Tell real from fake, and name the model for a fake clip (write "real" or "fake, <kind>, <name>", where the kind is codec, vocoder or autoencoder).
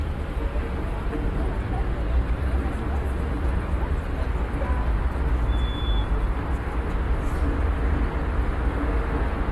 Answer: real